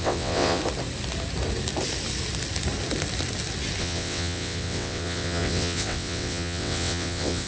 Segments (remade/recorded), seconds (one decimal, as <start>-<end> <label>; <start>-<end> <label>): 0.0-0.6 remade; 0.6-3.8 recorded; 3.8-7.5 remade